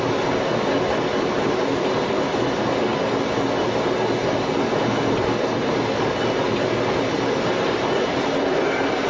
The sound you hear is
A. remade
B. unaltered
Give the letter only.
B